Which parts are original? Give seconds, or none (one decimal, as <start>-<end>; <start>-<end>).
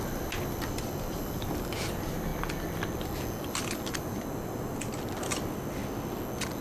2.3-3.5; 5.8-6.6